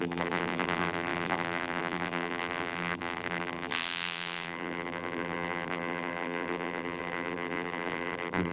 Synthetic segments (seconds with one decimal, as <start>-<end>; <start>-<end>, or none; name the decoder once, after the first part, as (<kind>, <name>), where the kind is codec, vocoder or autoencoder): 0.0-8.5 (vocoder, BigVGAN v2)

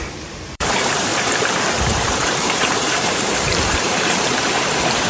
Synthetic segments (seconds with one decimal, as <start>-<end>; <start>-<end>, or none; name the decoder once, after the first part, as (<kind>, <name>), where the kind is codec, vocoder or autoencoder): 0.0-1.1 (vocoder, BigVGAN v2); 1.7-5.1

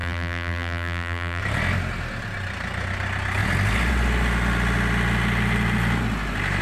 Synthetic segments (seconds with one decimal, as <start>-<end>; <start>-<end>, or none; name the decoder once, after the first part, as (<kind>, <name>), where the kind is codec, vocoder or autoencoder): 0.0-1.4 (vocoder, BigVGAN v2)

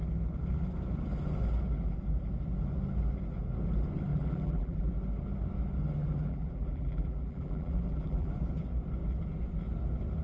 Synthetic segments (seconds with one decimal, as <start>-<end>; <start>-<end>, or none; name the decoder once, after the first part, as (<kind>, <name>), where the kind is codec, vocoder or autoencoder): 4.1-4.9 (vocoder, BigVGAN v2); 6.0-8.3